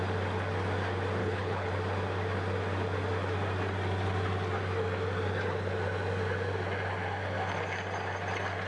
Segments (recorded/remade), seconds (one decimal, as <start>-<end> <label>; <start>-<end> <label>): 0.0-1.2 recorded; 1.2-1.7 remade; 1.7-8.7 recorded